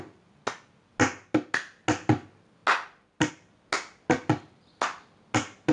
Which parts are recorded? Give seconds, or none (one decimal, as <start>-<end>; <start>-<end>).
0.0-5.7